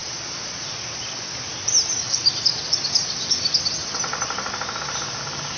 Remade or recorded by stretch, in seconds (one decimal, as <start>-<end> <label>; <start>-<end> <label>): 0.0-0.6 remade; 0.6-5.6 recorded